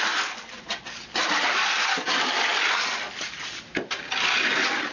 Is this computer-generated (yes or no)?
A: no